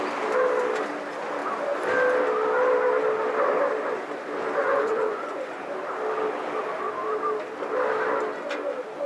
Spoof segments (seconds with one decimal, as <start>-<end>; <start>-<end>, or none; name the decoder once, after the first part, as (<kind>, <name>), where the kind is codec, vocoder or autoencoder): 4.6-5.6 (vocoder, Vocos)